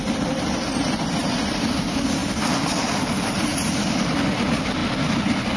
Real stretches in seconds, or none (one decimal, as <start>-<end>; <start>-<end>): none